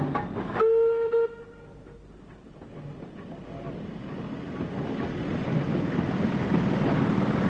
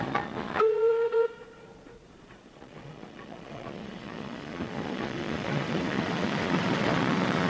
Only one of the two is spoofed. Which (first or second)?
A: second